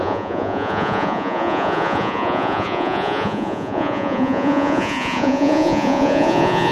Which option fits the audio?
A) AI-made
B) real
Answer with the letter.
A